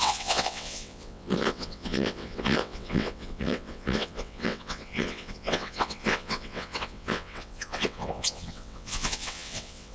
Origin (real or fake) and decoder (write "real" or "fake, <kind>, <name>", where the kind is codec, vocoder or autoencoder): fake, vocoder, WaveNeXt